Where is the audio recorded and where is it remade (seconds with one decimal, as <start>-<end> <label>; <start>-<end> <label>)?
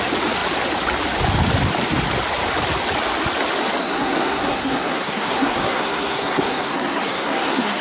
0.0-3.8 recorded; 3.8-7.8 remade